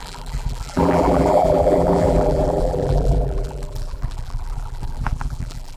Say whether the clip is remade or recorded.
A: remade